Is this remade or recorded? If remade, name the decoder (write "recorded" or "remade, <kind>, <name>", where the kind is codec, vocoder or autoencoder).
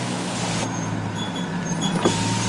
recorded